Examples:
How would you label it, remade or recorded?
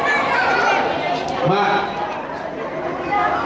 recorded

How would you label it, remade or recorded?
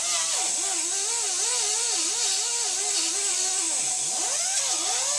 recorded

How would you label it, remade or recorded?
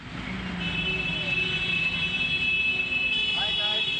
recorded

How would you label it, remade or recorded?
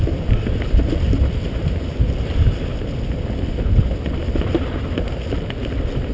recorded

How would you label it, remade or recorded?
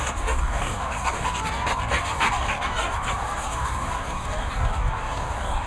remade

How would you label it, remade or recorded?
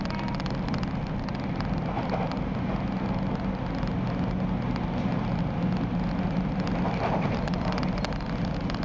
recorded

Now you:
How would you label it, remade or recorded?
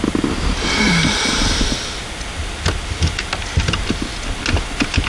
recorded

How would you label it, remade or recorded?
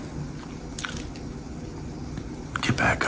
recorded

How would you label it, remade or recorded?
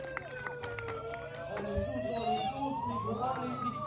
recorded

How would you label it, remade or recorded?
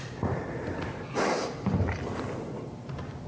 recorded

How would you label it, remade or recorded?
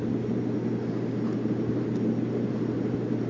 recorded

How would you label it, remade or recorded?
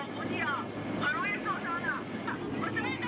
recorded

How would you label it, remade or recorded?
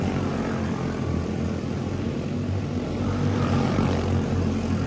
recorded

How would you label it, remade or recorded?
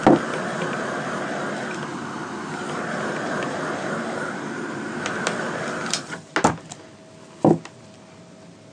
recorded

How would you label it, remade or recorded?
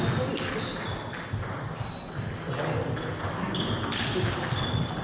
recorded